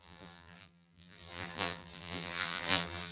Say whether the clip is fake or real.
fake